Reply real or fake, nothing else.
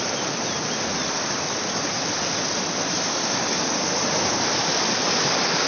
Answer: real